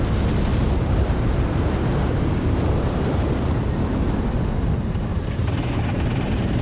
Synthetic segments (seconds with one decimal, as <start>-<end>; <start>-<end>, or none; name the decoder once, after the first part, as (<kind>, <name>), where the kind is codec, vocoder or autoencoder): 0.5-3.2 (vocoder, BigVGAN v2); 5.1-6.6